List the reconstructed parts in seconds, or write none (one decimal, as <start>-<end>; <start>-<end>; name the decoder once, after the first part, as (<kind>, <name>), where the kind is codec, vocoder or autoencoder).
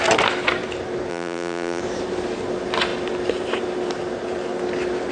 1.1-1.8 (vocoder, BigVGAN v2)